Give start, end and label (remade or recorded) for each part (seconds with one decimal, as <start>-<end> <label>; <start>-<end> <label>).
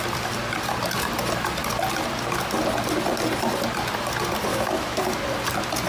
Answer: 0.0-4.5 recorded; 4.5-5.0 remade; 5.0-5.9 recorded